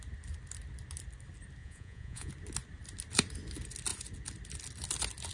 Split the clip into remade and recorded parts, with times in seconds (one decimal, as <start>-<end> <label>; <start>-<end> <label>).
0.0-1.6 recorded; 1.6-2.3 remade; 2.3-5.3 recorded